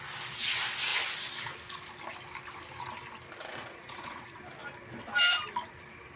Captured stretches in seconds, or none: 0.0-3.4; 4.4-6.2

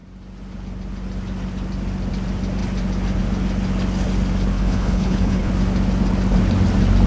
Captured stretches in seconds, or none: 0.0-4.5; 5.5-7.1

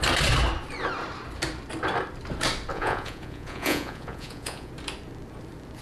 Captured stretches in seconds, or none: 0.0-2.7; 4.7-5.8

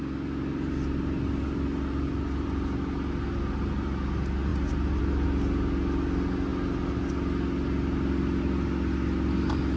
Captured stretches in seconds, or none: 0.0-9.8